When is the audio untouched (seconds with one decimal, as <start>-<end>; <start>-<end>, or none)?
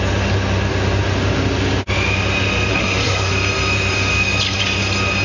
0.0-2.7; 3.3-5.2